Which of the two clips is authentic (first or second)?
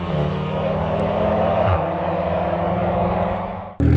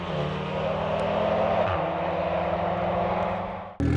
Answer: second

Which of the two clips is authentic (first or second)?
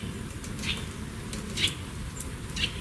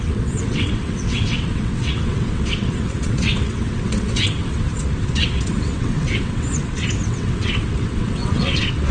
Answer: first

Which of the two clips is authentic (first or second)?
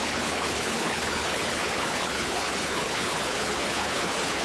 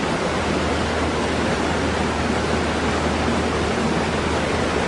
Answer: second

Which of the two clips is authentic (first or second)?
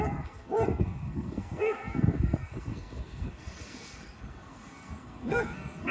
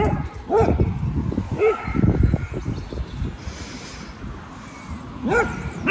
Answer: second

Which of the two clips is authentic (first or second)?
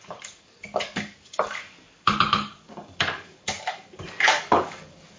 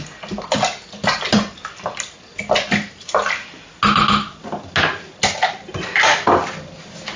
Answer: second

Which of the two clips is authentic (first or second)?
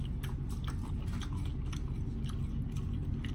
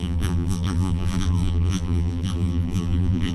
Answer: first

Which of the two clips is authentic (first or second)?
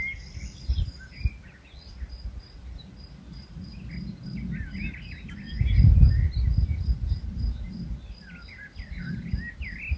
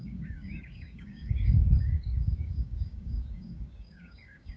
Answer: first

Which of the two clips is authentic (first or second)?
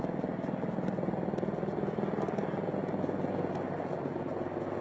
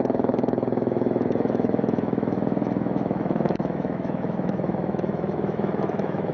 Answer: first